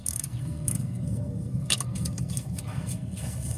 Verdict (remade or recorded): remade